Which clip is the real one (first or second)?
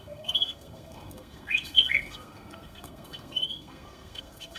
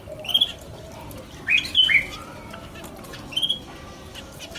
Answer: second